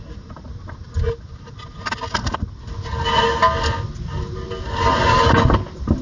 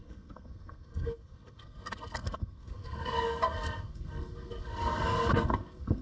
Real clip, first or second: first